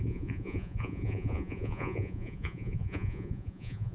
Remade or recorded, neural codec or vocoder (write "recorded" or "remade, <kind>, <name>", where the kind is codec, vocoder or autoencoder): remade, vocoder, Vocos